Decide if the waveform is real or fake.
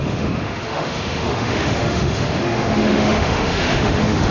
fake